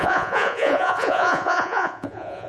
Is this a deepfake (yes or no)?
yes